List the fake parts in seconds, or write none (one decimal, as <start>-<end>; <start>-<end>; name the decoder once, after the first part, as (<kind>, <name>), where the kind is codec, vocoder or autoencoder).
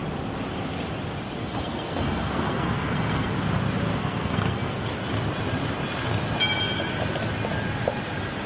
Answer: 1.4-3.3 (codec, SNAC); 4.0-4.9